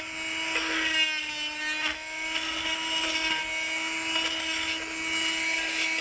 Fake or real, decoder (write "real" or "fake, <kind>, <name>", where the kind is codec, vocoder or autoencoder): real